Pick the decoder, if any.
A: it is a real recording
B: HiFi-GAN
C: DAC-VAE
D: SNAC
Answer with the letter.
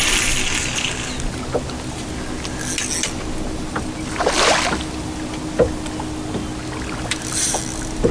A